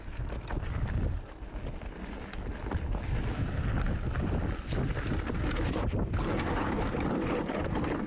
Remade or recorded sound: recorded